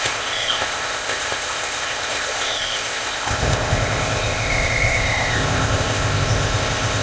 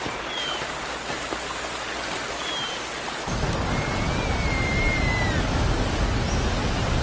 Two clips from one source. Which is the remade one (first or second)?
first